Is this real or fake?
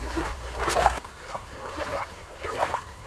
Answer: fake